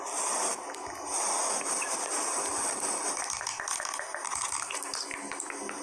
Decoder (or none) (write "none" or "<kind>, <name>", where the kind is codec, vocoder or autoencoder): none